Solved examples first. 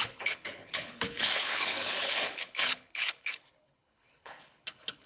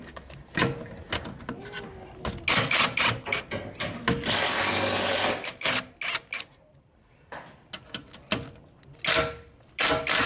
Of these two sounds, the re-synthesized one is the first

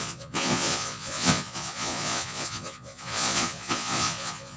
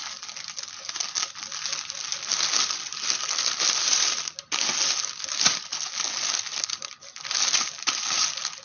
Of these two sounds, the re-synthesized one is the first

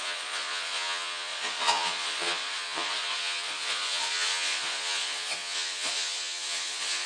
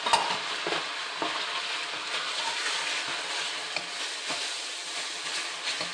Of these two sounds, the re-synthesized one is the first